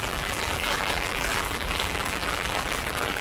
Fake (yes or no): yes